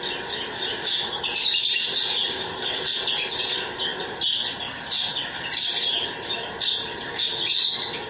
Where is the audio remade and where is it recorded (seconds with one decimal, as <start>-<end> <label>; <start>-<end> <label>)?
0.0-2.2 recorded; 2.2-2.8 remade; 2.8-3.9 recorded; 3.9-6.4 remade; 6.4-8.1 recorded